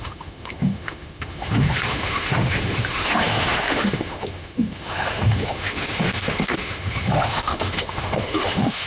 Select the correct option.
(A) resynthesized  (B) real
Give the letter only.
A